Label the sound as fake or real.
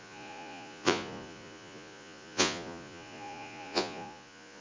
fake